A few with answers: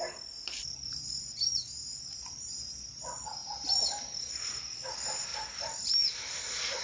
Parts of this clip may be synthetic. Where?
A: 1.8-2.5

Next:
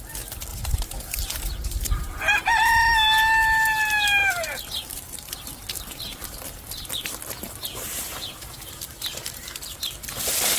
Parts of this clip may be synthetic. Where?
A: 0.5-2.2; 4.2-5.3; 7.7-8.7